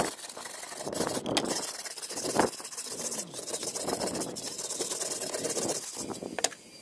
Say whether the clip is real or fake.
real